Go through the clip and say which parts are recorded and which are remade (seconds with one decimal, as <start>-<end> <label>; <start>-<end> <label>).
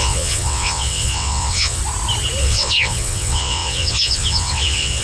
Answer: 0.0-1.8 remade; 1.8-2.4 recorded; 2.4-5.0 remade